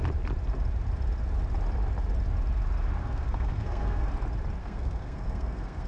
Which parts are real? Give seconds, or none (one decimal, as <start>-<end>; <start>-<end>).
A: 0.0-3.0; 4.1-4.6